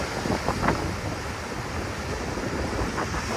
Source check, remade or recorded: recorded